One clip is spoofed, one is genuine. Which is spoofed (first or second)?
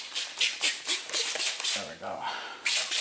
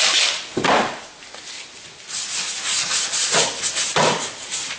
first